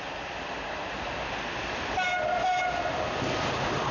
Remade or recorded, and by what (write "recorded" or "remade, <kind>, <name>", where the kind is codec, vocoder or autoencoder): recorded